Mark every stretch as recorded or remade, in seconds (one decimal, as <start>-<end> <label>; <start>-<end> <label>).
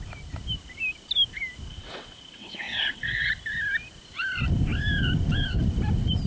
0.0-1.7 recorded; 1.7-3.3 remade; 3.3-6.3 recorded